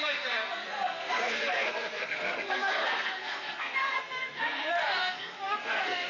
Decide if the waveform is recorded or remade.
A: remade